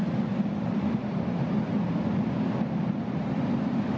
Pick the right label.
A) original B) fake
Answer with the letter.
A